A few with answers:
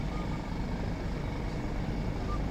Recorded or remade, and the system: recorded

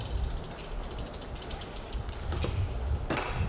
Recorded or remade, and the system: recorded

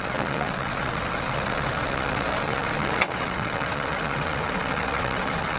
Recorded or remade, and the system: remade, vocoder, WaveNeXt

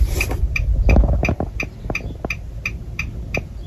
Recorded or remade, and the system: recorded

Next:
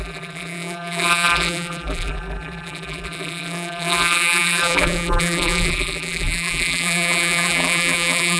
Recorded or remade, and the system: remade, vocoder, BigVGAN v2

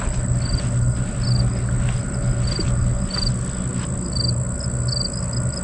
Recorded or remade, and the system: recorded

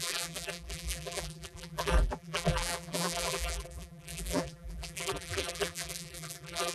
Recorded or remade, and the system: remade, vocoder, BigVGAN v2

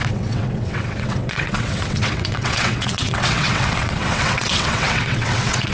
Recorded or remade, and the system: remade, vocoder, WaveNeXt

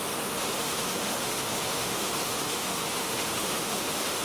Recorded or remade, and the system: remade, autoencoder, DAC-VAE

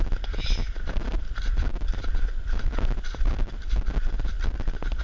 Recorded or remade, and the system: recorded